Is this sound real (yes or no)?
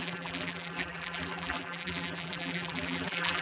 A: no